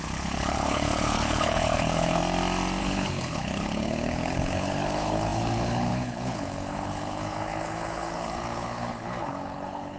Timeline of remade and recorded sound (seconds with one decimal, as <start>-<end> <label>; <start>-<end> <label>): 0.0-2.2 remade; 2.2-2.8 recorded; 2.8-10.0 remade